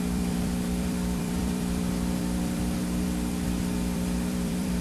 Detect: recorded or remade remade